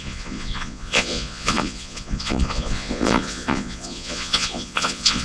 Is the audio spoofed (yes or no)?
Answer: yes